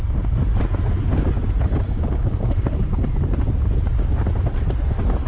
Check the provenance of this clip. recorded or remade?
recorded